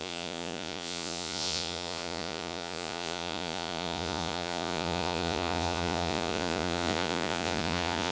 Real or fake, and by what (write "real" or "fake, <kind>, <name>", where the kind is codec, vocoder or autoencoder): fake, vocoder, Vocos